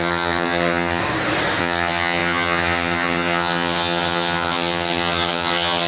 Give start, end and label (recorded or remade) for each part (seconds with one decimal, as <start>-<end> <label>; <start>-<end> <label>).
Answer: 0.0-1.0 remade; 1.0-1.6 recorded; 1.6-5.9 remade